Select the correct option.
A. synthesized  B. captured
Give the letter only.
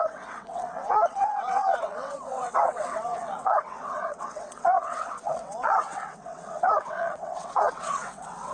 A